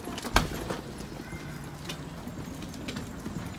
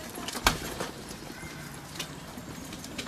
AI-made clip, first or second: second